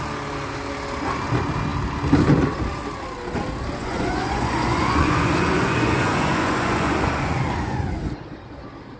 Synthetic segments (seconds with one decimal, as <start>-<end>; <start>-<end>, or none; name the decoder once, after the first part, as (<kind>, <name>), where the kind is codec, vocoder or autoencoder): 3.8-8.0 (vocoder, Vocos)